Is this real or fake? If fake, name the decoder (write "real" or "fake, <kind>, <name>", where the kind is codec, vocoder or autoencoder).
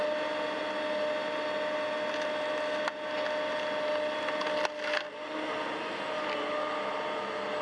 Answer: real